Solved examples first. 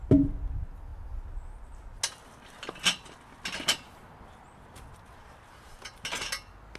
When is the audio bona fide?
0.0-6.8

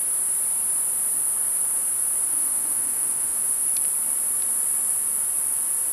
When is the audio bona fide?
0.0-2.3; 3.6-5.9

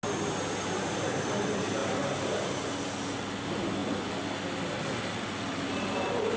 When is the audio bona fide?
0.0-6.4

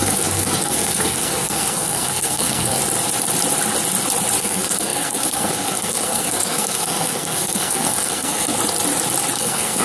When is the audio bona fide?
2.8-4.4; 8.5-9.4

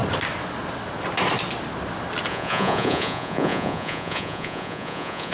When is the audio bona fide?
0.0-2.3

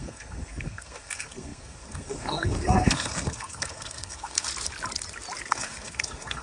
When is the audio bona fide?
4.5-5.5

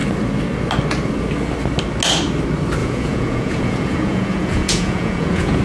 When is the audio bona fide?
0.0-2.8

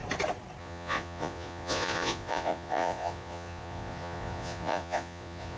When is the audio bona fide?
0.0-0.6